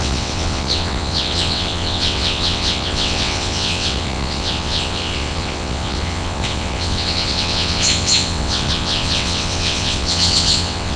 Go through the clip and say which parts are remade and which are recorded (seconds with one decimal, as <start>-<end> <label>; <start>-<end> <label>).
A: 0.0-11.0 remade